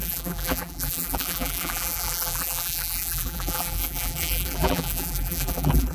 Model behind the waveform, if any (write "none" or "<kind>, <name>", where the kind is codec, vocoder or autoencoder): vocoder, BigVGAN v2